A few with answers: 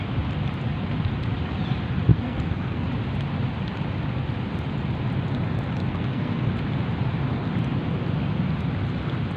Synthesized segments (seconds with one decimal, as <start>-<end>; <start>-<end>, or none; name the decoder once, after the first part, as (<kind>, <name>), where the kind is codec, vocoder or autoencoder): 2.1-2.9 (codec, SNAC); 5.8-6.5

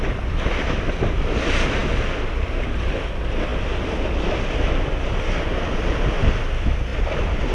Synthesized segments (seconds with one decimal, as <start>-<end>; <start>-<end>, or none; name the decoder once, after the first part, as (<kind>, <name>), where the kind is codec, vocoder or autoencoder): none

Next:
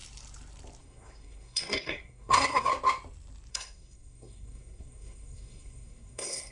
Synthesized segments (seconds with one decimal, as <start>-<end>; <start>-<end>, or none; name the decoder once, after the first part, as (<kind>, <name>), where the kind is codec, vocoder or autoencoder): 0.8-2.7 (codec, SNAC); 3.5-6.5

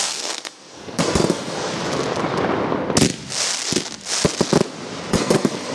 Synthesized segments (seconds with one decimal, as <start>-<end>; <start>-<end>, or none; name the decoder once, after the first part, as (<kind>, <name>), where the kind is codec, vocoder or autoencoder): 0.0-1.7 (codec, SNAC); 5.1-5.7

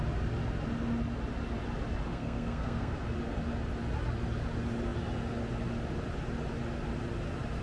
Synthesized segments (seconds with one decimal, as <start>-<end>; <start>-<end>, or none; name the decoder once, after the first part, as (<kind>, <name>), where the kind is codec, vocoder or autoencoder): 2.1-2.9 (codec, SNAC)

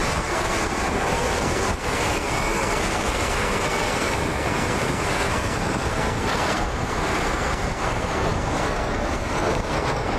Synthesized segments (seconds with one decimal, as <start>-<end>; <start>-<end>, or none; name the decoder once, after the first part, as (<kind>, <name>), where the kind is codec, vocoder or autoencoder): 0.0-10.2 (codec, SNAC)